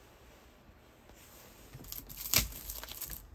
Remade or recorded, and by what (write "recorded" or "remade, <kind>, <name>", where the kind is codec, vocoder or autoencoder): recorded